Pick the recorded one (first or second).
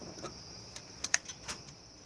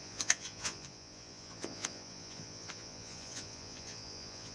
first